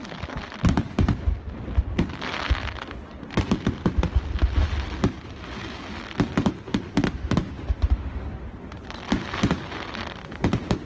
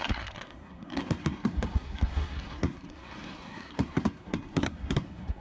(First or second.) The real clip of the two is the first